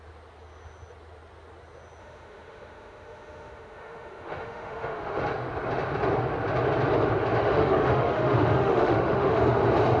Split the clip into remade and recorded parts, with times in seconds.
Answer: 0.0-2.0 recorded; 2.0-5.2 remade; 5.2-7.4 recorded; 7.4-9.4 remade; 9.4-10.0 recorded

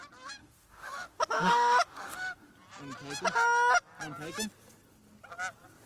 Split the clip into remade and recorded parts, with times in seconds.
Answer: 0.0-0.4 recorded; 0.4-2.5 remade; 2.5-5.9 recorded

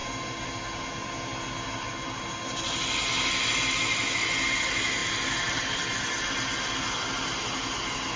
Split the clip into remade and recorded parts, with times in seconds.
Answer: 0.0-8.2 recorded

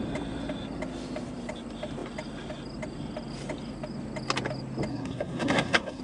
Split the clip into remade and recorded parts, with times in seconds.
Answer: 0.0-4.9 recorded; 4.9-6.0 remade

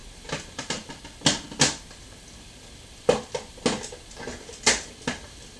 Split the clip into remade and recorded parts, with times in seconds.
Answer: 0.0-5.6 recorded

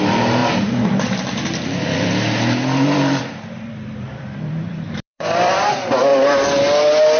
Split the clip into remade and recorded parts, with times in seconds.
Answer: 0.0-6.1 remade; 6.1-7.2 recorded